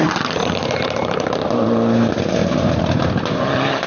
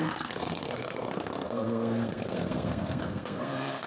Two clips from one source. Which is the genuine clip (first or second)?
first